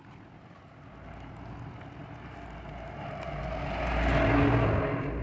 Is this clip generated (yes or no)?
no